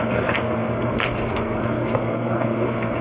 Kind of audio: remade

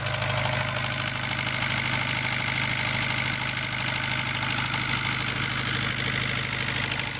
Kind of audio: recorded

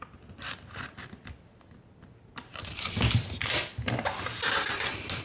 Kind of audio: recorded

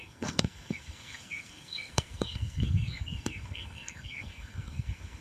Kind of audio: remade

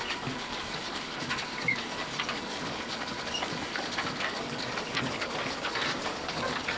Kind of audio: remade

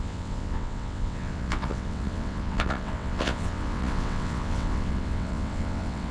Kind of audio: remade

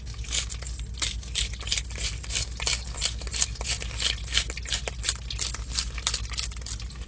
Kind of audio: recorded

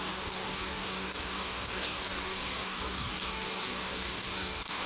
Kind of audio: remade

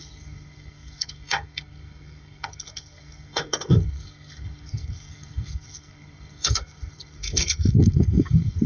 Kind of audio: remade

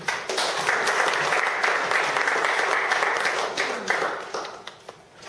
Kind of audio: recorded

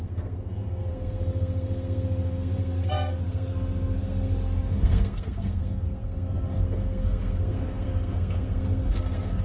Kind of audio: remade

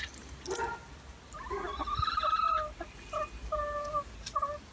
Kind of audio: recorded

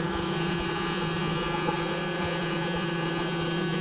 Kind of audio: remade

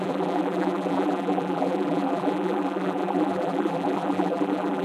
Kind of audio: remade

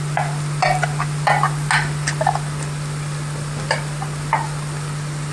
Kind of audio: recorded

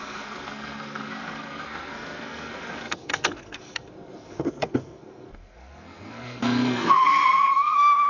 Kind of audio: remade